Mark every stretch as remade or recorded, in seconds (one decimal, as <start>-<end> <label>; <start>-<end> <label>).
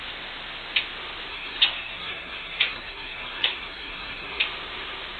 0.0-1.3 recorded; 1.3-4.4 remade; 4.4-5.2 recorded